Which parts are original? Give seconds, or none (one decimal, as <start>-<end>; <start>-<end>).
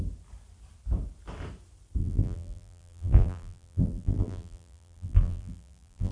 0.0-2.0